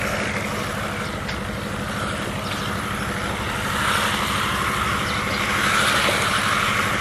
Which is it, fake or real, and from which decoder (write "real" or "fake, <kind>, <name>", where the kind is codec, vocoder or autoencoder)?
real